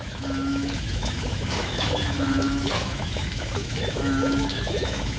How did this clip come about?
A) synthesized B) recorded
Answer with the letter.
A